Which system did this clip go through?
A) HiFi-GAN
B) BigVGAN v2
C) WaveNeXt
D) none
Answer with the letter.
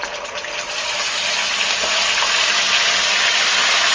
D